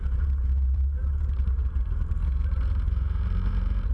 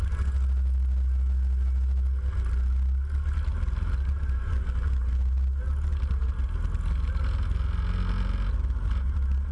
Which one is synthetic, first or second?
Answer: first